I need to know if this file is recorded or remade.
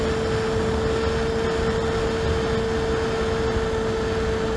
recorded